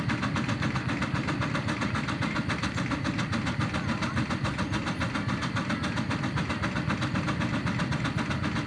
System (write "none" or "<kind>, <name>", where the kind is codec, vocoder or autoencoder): none